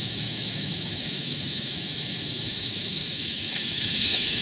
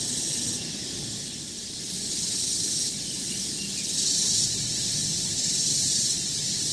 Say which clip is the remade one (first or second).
first